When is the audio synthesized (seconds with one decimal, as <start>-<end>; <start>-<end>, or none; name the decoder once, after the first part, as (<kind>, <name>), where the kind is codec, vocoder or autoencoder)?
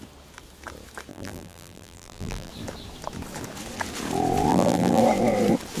1.1-2.5 (vocoder, BigVGAN v2); 4.5-5.0